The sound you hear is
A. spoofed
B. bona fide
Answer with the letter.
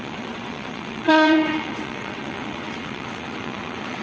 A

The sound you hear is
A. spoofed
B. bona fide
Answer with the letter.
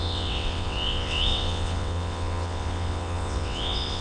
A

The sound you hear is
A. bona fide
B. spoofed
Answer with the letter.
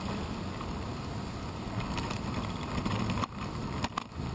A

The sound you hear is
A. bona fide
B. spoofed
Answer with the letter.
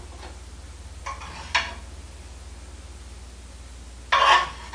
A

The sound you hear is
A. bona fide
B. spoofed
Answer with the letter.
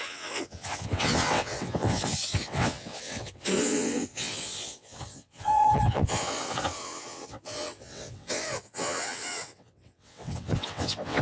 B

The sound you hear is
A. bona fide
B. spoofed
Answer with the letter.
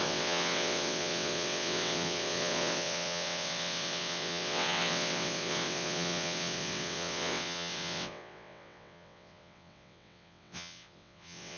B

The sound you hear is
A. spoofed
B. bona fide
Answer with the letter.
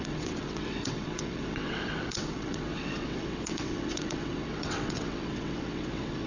A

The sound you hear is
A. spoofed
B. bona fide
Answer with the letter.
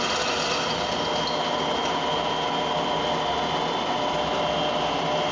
B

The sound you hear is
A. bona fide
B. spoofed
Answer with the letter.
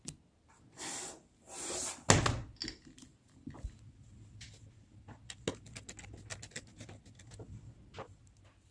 A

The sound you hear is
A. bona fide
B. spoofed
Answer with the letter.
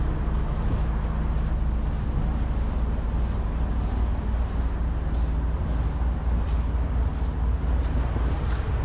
A